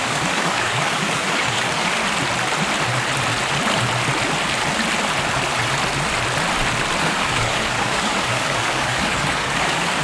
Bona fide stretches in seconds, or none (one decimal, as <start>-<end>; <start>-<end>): 2.0-7.0